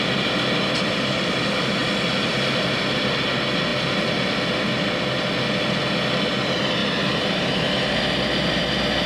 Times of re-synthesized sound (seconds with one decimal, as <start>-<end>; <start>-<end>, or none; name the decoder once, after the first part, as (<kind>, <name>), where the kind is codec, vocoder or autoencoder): 6.8-8.6 (vocoder, BigVGAN v2)